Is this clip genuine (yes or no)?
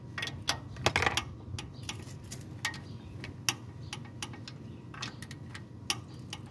yes